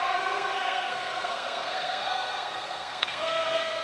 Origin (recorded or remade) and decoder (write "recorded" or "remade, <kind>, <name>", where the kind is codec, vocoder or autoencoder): remade, codec, SNAC